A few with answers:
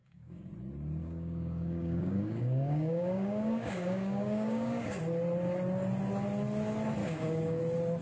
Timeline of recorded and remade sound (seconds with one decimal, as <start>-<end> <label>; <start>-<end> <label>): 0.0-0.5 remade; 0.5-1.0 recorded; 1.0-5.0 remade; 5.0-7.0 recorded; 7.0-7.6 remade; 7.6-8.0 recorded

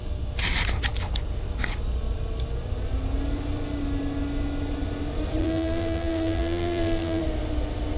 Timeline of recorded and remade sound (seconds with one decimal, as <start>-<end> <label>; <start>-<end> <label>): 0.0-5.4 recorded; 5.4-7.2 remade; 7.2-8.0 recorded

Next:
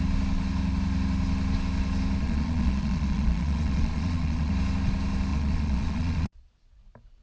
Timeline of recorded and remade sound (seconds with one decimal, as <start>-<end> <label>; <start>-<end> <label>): 0.0-2.2 recorded; 2.2-4.5 remade; 4.5-5.3 recorded; 5.3-6.5 remade; 6.5-7.2 recorded

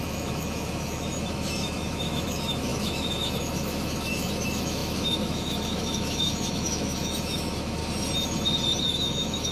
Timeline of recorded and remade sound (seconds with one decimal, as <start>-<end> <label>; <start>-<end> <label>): 0.0-7.8 remade; 7.8-8.8 recorded; 8.8-9.5 remade

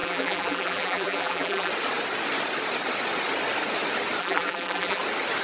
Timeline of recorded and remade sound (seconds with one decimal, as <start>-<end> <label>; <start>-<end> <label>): 0.0-1.7 remade; 1.7-4.2 recorded; 4.2-5.0 remade; 5.0-5.4 recorded

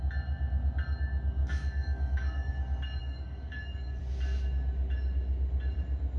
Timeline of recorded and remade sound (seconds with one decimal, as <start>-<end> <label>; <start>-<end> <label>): 0.0-1.4 recorded; 1.4-2.5 remade; 2.5-3.0 recorded; 3.0-4.0 remade; 4.0-6.2 recorded

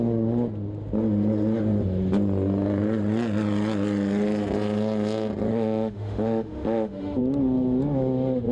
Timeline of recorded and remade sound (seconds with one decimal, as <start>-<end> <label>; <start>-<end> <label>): 0.0-5.5 recorded; 5.5-7.2 remade; 7.2-8.5 recorded